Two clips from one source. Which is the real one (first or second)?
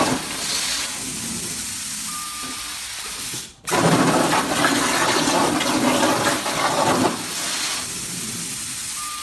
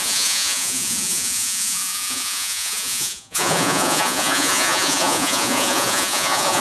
first